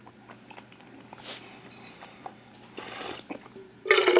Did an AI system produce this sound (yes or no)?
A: no